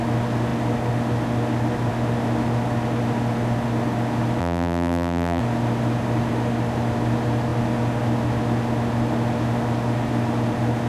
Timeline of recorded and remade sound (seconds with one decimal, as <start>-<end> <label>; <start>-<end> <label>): 0.0-4.4 recorded; 4.4-5.4 remade; 5.4-10.9 recorded